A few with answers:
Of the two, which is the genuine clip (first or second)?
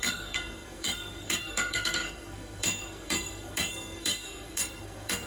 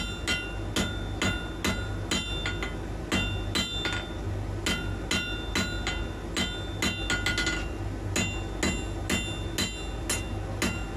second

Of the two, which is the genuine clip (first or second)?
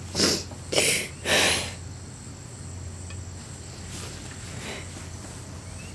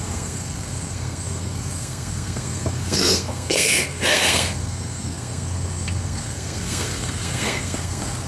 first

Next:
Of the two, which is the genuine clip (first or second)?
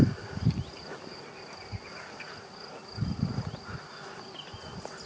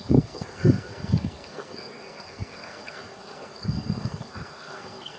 first